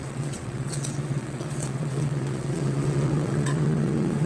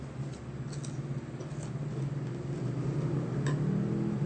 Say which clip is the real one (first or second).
second